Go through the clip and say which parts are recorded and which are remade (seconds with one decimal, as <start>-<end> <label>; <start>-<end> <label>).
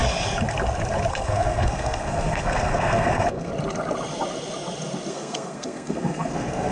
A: 0.0-1.1 recorded; 1.1-3.5 remade; 3.5-5.1 recorded; 5.1-6.7 remade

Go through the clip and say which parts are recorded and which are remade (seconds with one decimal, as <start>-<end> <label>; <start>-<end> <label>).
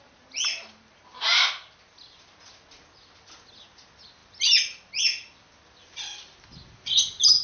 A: 0.0-7.4 recorded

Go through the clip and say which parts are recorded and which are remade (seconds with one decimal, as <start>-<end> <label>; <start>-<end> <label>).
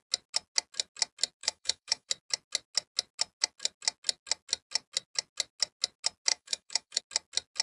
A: 0.0-1.4 recorded; 1.4-2.1 remade; 2.1-6.3 recorded; 6.3-7.0 remade; 7.0-7.6 recorded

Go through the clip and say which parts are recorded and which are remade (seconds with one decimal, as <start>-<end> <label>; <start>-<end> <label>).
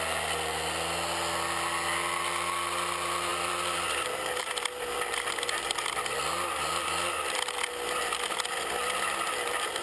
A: 0.0-3.3 recorded; 3.3-4.4 remade; 4.4-9.8 recorded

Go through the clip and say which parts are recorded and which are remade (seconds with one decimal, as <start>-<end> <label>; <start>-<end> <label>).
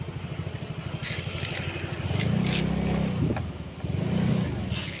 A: 0.0-5.0 recorded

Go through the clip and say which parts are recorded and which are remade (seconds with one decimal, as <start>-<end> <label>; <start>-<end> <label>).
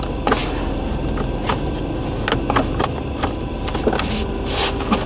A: 0.0-5.1 recorded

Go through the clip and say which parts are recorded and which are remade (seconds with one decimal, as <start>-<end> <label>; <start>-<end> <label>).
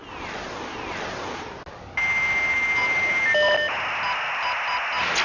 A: 0.0-5.2 recorded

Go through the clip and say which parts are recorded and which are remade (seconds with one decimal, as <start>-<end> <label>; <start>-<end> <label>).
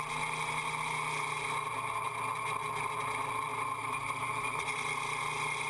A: 0.0-3.5 recorded; 3.5-4.6 remade; 4.6-5.7 recorded